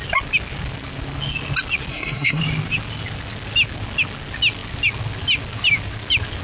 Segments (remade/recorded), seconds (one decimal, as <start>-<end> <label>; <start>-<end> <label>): 0.0-1.9 recorded; 1.9-2.4 remade; 2.4-6.4 recorded